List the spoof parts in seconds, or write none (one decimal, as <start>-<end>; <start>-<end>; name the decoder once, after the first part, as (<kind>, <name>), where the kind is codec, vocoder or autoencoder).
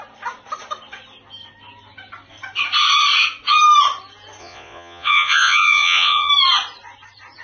4.4-6.3 (vocoder, Vocos)